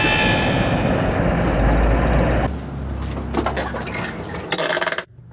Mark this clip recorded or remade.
recorded